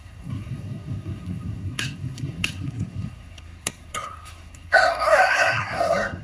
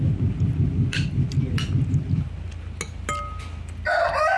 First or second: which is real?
second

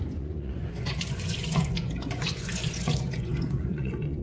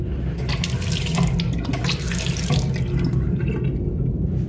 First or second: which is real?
second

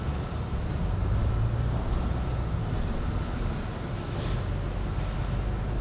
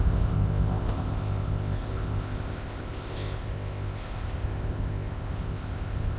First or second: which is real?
first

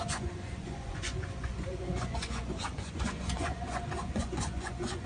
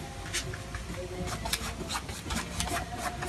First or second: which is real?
second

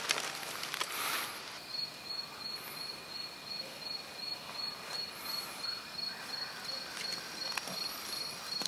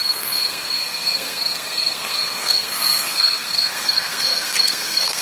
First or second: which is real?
first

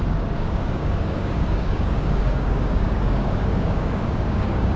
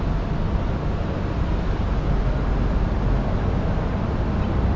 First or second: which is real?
second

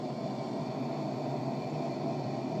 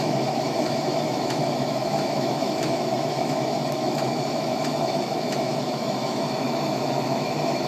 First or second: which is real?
first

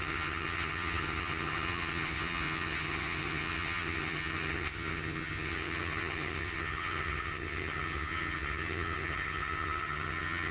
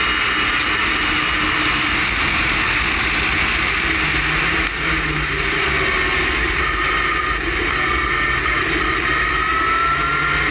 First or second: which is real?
second